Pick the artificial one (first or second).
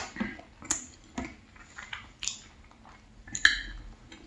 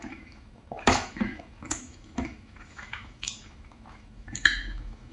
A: second